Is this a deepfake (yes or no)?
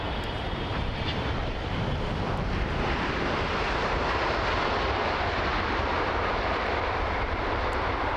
yes